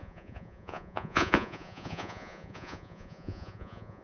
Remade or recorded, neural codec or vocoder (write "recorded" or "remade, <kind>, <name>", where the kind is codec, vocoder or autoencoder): remade, vocoder, Vocos